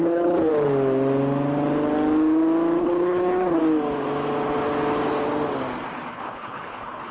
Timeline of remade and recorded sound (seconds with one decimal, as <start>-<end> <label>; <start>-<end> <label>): 0.0-0.5 remade; 0.5-2.8 recorded; 2.8-3.6 remade; 3.6-6.1 recorded; 6.1-7.1 remade

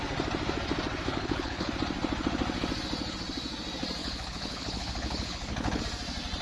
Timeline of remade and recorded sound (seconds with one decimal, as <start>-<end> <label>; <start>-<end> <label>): 0.0-1.1 recorded; 1.1-1.7 remade; 1.7-4.0 recorded; 4.0-5.8 remade; 5.8-6.4 recorded